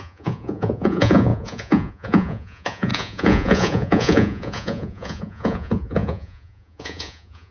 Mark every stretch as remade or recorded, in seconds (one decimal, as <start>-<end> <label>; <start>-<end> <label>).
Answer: 0.0-7.5 remade